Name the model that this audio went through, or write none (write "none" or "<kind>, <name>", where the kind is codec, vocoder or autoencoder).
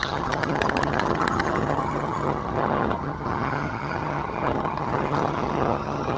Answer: vocoder, HiFi-GAN